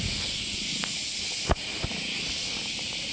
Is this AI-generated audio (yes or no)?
no